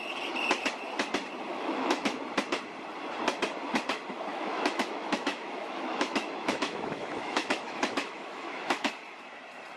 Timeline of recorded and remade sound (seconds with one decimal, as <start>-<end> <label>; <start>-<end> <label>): 0.0-1.5 recorded; 1.5-2.2 remade; 2.2-4.3 recorded; 4.3-8.9 remade; 8.9-9.8 recorded